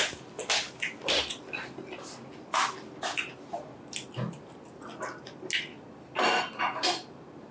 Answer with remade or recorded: recorded